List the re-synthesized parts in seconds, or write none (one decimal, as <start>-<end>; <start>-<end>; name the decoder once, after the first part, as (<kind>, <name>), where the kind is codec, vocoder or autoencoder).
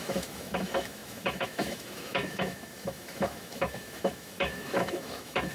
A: 0.0-5.5 (autoencoder, DAC-VAE)